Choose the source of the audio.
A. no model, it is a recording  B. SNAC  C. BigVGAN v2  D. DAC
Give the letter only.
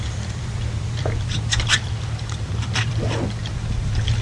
C